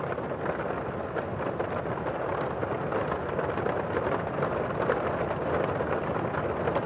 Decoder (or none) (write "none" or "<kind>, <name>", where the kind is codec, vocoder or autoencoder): none